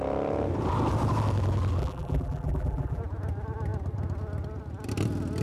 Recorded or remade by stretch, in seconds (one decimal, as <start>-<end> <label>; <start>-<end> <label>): 0.0-1.8 recorded; 1.8-3.0 remade; 3.0-5.4 recorded